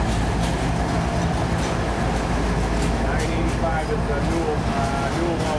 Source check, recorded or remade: recorded